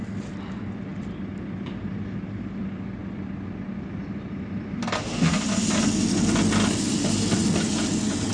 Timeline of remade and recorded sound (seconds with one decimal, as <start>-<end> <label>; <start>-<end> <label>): 0.0-8.3 recorded